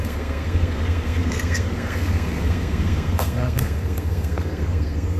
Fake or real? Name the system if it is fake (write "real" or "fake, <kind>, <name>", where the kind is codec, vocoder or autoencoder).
fake, codec, SNAC